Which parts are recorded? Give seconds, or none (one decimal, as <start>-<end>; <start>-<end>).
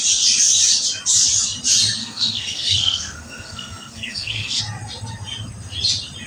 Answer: 0.0-2.0; 4.6-6.3